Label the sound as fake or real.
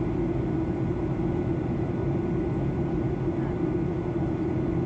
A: real